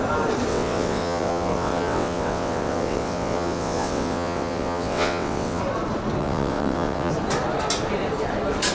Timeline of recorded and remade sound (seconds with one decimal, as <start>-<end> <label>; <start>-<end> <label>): 0.0-0.5 recorded; 0.5-5.6 remade; 5.6-6.2 recorded; 6.2-7.1 remade; 7.1-8.7 recorded